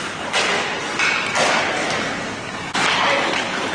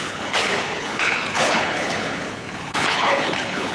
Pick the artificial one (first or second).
second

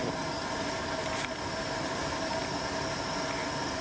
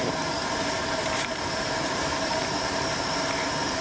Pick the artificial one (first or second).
second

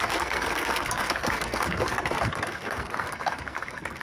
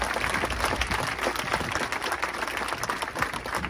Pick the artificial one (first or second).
first